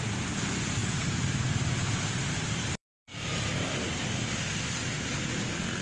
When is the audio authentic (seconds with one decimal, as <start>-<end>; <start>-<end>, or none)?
0.0-0.8; 4.3-5.8